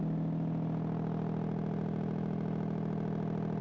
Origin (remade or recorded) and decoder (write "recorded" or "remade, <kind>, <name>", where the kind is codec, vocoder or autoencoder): recorded